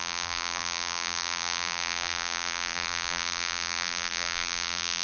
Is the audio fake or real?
fake